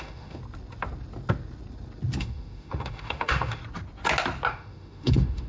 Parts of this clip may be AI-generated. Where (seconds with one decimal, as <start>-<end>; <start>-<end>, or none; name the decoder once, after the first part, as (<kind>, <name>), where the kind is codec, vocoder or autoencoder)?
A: 0.0-0.4 (autoencoder, DAC-VAE); 2.2-3.6; 4.5-5.5